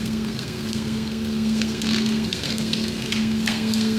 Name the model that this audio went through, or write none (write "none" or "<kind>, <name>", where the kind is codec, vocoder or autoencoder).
codec, SNAC